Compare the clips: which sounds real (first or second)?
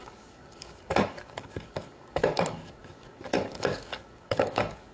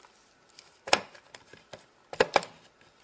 second